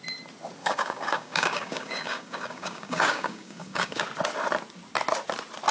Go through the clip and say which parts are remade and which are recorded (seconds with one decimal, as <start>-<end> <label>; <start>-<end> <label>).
0.0-0.6 recorded; 0.6-4.0 remade; 4.0-5.7 recorded

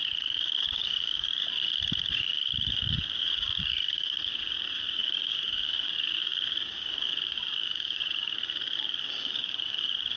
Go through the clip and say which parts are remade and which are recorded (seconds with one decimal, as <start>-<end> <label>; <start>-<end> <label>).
0.0-10.2 remade

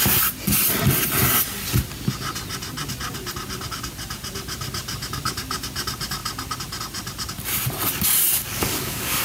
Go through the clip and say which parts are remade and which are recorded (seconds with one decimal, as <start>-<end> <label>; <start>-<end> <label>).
0.0-8.2 recorded; 8.2-9.2 remade

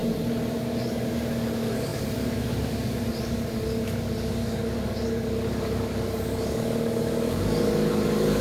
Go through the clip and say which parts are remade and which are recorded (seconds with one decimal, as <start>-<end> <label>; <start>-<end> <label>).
0.0-0.5 recorded; 0.5-8.4 remade

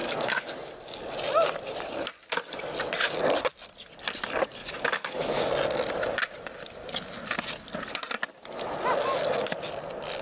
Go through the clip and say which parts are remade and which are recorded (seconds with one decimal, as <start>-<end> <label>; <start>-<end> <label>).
0.0-0.5 remade; 0.5-4.6 recorded; 4.6-5.4 remade; 5.4-10.2 recorded

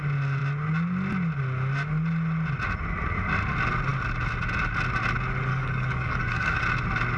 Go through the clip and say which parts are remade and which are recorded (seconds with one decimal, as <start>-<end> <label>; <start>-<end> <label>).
0.0-5.5 recorded; 5.5-6.6 remade; 6.6-7.2 recorded